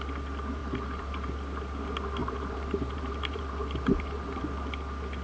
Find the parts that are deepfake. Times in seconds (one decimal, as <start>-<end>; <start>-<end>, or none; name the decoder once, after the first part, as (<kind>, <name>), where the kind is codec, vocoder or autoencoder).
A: 0.6-1.3 (vocoder, BigVGAN v2); 2.2-4.4